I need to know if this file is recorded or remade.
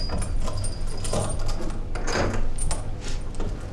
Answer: recorded